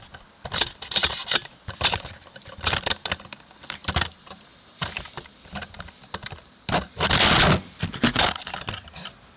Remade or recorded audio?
recorded